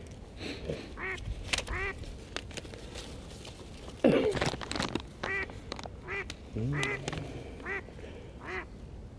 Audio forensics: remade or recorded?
recorded